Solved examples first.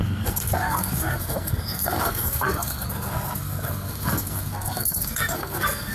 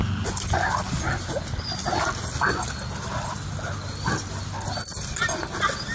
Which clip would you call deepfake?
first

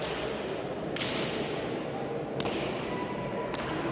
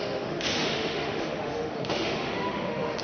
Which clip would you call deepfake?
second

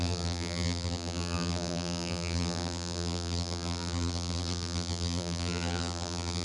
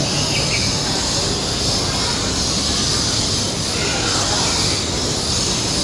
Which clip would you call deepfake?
first